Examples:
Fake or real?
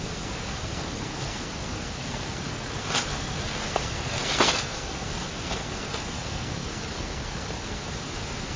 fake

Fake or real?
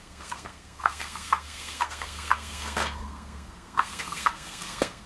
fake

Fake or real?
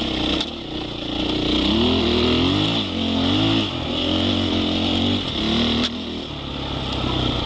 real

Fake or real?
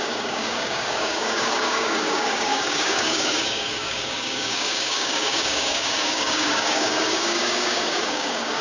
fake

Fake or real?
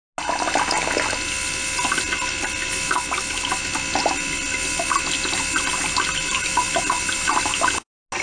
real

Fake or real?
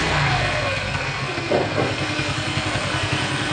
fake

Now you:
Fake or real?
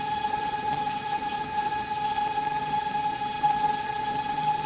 fake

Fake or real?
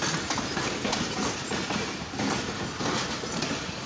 real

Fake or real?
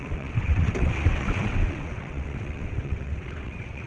fake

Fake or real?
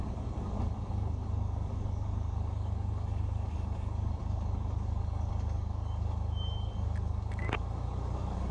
fake